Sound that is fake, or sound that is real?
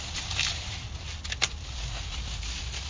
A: real